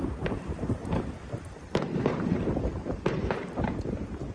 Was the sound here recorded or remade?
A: remade